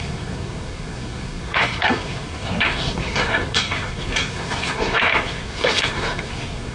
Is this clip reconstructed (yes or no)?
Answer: yes